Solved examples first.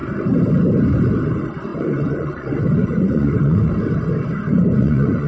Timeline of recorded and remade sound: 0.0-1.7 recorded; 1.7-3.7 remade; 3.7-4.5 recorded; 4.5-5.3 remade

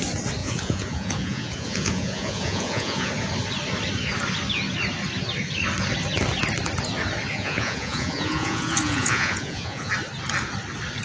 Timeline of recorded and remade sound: 0.0-0.4 recorded; 0.4-3.1 remade; 3.1-7.3 recorded; 7.3-9.9 remade; 9.9-11.0 recorded

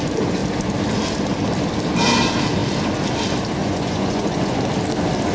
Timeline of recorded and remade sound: 0.0-3.6 recorded; 3.6-4.6 remade; 4.6-5.3 recorded

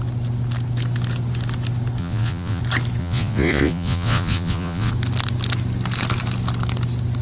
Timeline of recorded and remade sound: 0.0-2.0 recorded; 2.0-2.6 remade; 2.6-3.0 recorded; 3.0-4.9 remade; 4.9-7.2 recorded

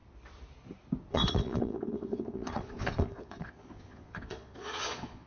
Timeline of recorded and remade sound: 0.0-1.1 recorded; 1.1-5.3 remade

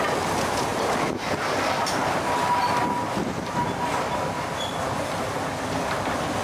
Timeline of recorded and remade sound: 0.0-6.4 recorded

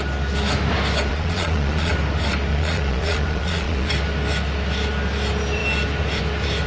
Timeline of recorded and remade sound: 0.0-1.1 recorded; 1.1-1.9 remade; 1.9-2.5 recorded; 2.5-3.9 remade; 3.9-6.7 recorded

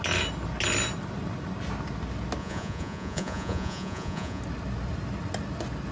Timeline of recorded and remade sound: 0.0-2.4 recorded; 2.4-4.4 remade; 4.4-5.9 recorded